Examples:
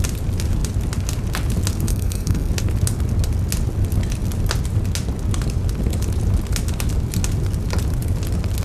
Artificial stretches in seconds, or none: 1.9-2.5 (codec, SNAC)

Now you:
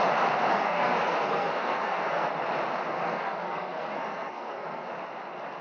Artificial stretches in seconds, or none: 0.5-2.3 (codec, SNAC); 2.9-4.9